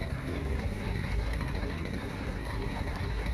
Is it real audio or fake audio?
fake